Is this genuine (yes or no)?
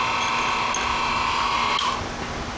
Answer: yes